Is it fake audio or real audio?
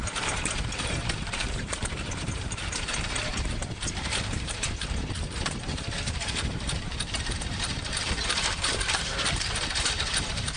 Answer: fake